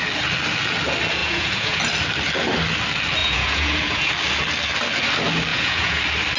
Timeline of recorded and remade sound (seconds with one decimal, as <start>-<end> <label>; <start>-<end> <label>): 0.0-1.2 recorded; 1.2-1.8 remade; 1.8-3.2 recorded; 3.2-4.1 remade; 4.1-5.5 recorded; 5.5-6.0 remade; 6.0-6.4 recorded